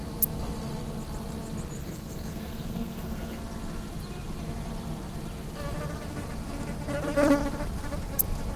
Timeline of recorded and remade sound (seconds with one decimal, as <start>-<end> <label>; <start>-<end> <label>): 0.0-1.8 recorded; 1.8-3.4 remade; 3.4-8.6 recorded